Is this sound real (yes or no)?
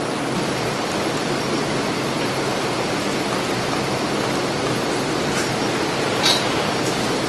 yes